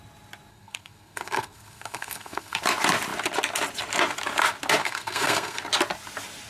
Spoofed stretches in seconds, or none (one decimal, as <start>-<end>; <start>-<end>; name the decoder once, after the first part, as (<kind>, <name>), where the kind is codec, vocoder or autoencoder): 0.5-2.6 (codec, SNAC); 4.8-5.6